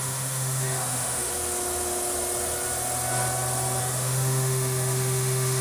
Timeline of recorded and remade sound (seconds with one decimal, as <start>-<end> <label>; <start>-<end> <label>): 0.0-1.3 remade; 1.3-3.8 recorded; 3.8-5.6 remade